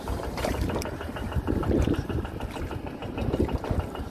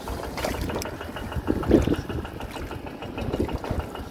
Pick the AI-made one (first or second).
first